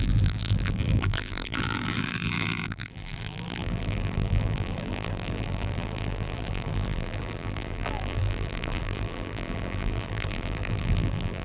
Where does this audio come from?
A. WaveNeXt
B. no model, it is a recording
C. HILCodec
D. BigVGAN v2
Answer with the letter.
D